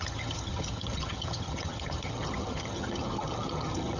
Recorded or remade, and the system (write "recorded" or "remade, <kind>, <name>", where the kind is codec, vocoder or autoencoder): remade, vocoder, HiFi-GAN